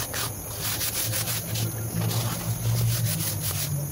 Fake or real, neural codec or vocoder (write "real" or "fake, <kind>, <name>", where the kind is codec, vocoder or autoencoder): real